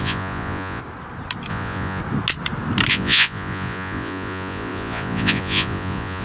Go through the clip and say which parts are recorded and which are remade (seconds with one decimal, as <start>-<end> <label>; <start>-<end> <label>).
0.0-0.8 remade; 0.8-1.5 recorded; 1.5-2.0 remade; 2.0-2.9 recorded; 2.9-6.2 remade